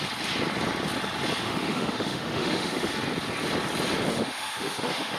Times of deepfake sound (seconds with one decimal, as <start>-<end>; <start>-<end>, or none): 1.4-2.9; 4.1-5.2